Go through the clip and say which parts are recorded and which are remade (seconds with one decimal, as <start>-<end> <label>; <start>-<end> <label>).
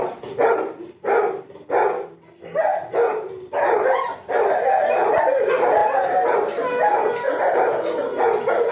0.0-8.7 recorded